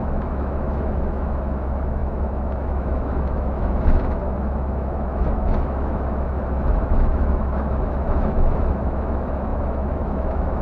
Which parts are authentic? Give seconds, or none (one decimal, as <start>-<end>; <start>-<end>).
none